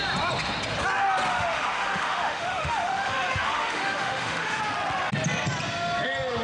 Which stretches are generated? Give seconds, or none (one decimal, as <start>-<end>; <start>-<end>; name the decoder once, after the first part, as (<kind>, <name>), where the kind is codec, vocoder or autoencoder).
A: 1.3-4.6 (autoencoder, DAC-VAE)